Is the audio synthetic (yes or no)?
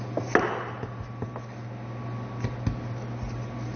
no